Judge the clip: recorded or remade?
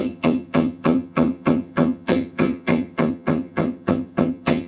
remade